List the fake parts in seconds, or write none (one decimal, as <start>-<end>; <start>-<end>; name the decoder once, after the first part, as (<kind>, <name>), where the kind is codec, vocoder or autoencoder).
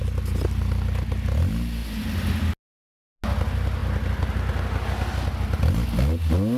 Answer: none